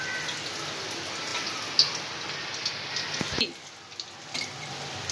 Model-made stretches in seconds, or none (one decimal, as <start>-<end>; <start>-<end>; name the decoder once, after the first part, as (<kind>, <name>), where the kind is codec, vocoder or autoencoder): none